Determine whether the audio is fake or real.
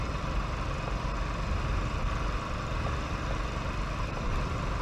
real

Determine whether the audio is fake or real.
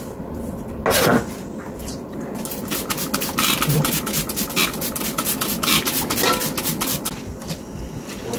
real